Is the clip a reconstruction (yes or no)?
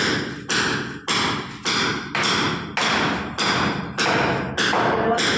no